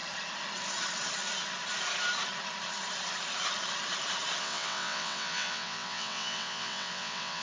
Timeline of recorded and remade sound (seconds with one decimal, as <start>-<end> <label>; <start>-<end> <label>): 0.0-4.4 recorded; 4.4-7.4 remade